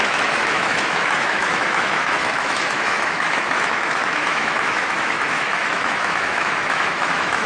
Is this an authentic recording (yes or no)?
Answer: no